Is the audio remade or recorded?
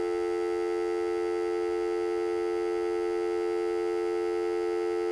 recorded